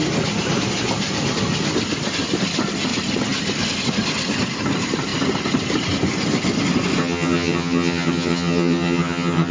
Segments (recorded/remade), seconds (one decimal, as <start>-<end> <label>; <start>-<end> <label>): 0.0-7.0 recorded; 7.0-9.5 remade